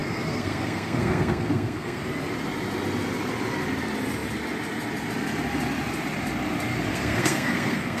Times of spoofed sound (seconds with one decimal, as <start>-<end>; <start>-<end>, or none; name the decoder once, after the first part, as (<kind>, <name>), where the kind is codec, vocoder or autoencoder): 0.0-2.0 (codec, SNAC); 6.9-8.0